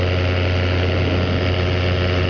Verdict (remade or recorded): recorded